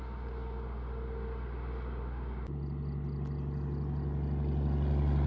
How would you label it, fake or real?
real